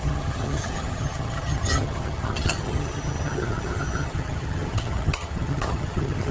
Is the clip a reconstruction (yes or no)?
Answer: yes